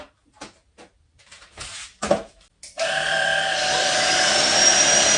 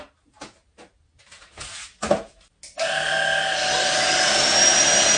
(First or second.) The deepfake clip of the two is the first